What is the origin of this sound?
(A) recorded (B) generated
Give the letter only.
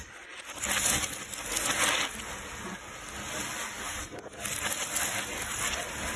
A